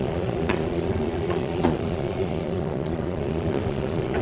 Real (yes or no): no